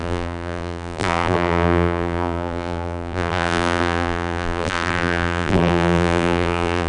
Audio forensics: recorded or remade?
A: remade